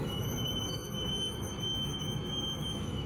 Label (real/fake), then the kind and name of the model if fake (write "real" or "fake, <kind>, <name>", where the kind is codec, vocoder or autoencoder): fake, autoencoder, DAC-VAE